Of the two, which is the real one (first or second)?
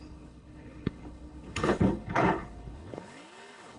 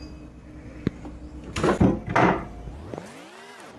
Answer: second